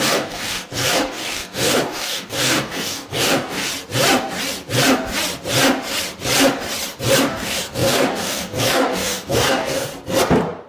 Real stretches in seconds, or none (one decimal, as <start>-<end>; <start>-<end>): 3.7-7.2; 9.9-10.7